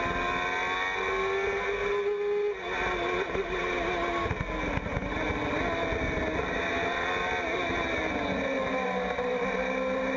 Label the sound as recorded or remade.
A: recorded